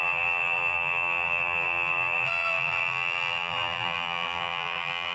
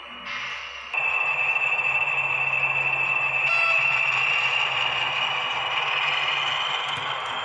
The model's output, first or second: first